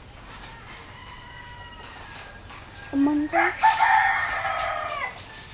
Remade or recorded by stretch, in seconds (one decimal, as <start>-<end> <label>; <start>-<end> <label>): 0.0-3.6 recorded; 3.6-4.3 remade; 4.3-5.5 recorded